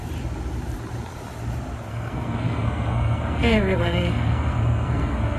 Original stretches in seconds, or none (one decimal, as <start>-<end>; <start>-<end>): 0.0-1.9